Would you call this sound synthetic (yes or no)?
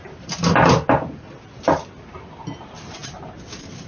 no